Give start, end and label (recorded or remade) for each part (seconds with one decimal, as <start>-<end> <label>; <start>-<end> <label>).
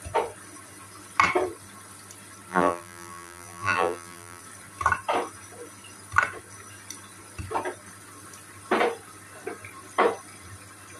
0.0-2.5 recorded; 2.5-4.4 remade; 4.4-11.0 recorded